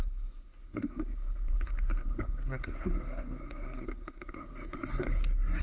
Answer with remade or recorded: remade